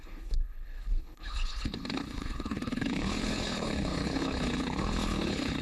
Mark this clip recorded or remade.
remade